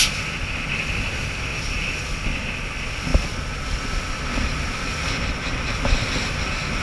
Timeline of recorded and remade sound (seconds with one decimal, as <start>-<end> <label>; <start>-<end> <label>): 0.0-1.5 recorded; 1.5-2.0 remade; 2.0-6.8 recorded